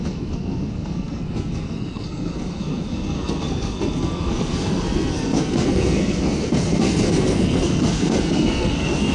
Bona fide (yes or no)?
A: no